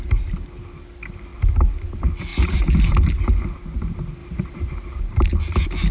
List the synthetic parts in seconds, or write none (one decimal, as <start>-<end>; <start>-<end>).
2.3-2.8; 4.2-5.0